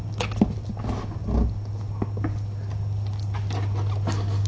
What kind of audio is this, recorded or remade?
recorded